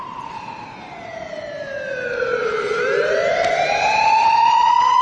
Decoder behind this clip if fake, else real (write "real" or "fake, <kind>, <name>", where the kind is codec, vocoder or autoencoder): fake, vocoder, BigVGAN v2